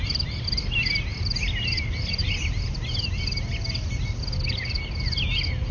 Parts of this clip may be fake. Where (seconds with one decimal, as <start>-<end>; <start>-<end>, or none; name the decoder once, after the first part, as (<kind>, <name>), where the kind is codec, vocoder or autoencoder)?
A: none